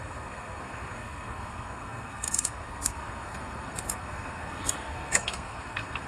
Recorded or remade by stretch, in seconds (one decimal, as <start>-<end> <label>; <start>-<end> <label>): 0.0-6.1 remade